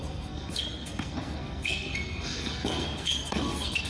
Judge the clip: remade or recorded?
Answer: remade